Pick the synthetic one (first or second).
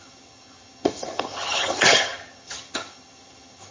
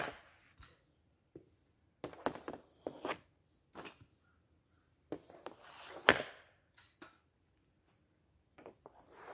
first